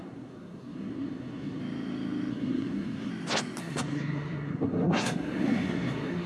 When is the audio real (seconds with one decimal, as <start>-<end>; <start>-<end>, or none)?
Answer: 1.6-2.3; 3.1-3.6